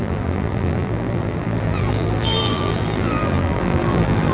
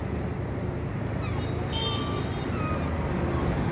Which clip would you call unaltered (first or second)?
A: second